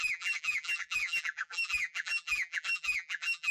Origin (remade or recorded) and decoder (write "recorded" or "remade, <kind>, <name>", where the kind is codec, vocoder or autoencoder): remade, vocoder, BigVGAN v2